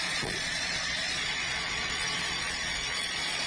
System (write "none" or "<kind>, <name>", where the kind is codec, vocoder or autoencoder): vocoder, Vocos